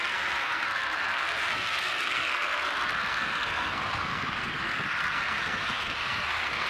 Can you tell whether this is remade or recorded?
remade